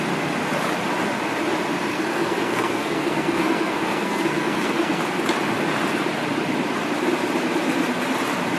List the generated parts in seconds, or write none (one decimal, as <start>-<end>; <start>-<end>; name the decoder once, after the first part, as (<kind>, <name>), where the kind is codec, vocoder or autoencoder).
1.9-5.0 (codec, SNAC)